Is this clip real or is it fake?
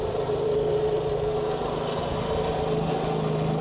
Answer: real